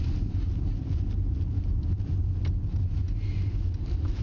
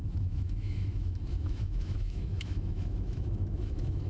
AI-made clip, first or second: second